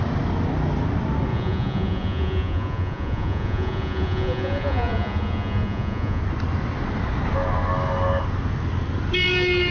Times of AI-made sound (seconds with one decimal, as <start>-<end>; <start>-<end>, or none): 1.3-6.2